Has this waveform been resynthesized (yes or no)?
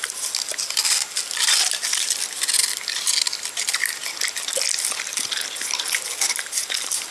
no